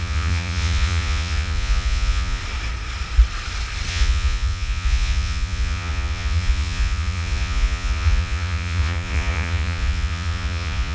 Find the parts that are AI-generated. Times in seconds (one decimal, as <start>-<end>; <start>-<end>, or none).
0.0-2.4; 3.9-10.9